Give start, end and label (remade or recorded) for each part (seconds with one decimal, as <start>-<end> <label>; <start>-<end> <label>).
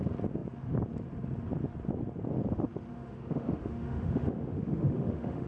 0.0-2.9 recorded; 2.9-5.5 remade